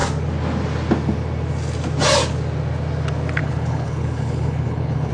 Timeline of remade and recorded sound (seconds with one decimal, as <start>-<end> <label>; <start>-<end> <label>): 0.0-3.4 recorded; 3.4-5.1 remade